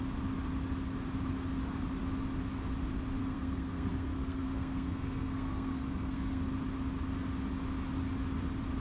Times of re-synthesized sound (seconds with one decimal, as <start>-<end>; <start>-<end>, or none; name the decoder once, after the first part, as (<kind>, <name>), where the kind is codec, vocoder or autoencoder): 3.2-6.4 (codec, SNAC)